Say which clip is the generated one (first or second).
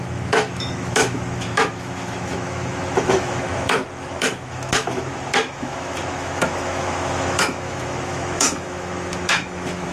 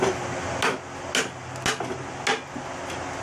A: first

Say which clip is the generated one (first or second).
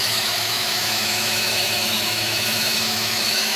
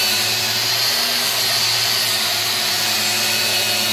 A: first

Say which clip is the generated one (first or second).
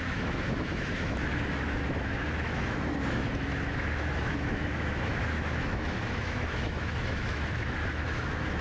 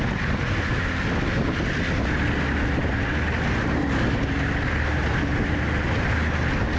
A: first